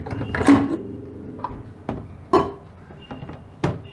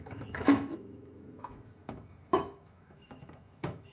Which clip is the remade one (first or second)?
second